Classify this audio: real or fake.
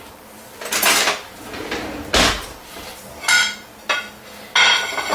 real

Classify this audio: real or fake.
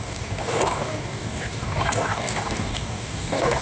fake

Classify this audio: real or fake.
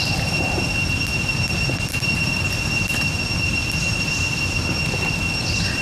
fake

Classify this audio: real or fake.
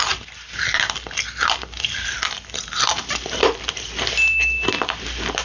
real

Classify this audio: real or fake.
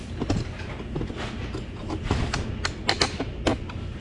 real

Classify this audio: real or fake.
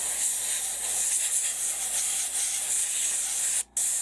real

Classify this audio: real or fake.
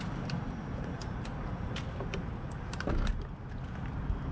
real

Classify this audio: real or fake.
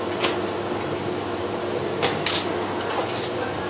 real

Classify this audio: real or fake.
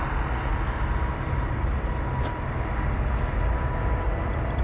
real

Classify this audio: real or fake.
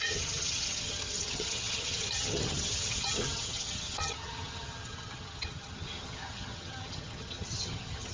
fake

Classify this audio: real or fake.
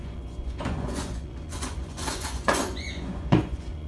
fake